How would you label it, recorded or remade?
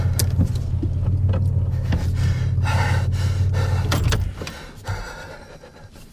recorded